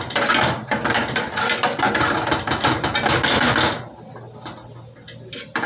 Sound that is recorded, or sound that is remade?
recorded